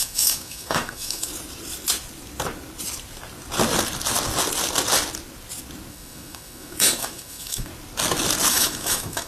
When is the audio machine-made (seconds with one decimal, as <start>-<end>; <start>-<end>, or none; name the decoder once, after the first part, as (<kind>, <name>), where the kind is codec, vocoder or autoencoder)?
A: 0.0-1.3 (autoencoder, DAC-VAE); 5.9-7.7; 8.5-9.3